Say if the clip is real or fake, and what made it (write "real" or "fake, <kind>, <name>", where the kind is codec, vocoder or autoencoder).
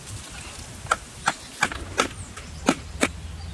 real